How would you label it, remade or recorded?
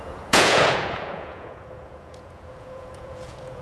remade